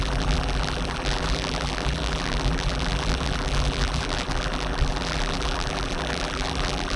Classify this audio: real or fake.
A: fake